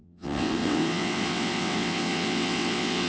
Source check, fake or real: fake